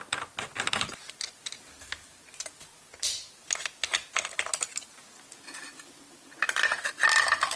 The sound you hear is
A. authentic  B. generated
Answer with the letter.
A